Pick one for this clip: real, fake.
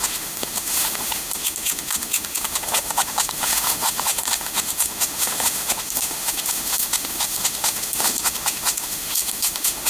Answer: fake